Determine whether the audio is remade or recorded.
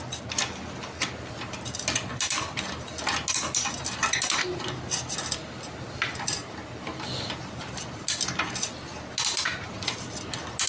recorded